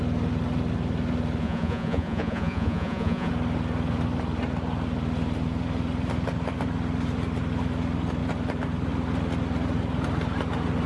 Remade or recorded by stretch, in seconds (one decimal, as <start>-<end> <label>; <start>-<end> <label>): 0.0-1.4 recorded; 1.4-3.3 remade; 3.3-10.9 recorded